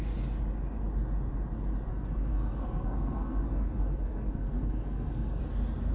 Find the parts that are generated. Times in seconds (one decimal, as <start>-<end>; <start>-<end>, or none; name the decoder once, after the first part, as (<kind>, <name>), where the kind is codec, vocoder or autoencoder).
1.9-5.4 (codec, SNAC)